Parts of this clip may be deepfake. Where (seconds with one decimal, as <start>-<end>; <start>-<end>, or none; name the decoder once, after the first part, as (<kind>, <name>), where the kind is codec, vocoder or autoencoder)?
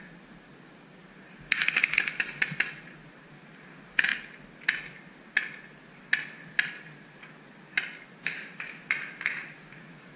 none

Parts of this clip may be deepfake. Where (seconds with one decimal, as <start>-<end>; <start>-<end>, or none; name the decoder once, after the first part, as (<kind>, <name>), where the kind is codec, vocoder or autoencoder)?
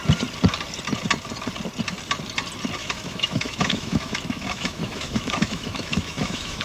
2.8-6.6 (autoencoder, DAC-VAE)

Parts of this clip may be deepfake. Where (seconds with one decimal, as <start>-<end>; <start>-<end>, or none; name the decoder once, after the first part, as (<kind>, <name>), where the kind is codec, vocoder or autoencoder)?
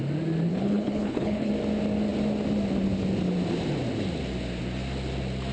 0.5-1.5 (codec, HILCodec)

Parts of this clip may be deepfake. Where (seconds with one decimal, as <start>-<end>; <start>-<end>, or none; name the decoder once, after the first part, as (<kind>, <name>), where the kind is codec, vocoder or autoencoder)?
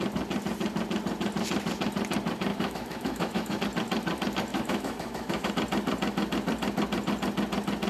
2.5-3.6 (autoencoder, DAC-VAE); 4.5-5.5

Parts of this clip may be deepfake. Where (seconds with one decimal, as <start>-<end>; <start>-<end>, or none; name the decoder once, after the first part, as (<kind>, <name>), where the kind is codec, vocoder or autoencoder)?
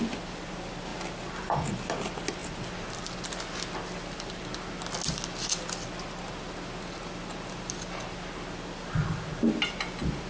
none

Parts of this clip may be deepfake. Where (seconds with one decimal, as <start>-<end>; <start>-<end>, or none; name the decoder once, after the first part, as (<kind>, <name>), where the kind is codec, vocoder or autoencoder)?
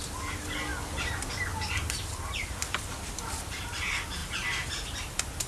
none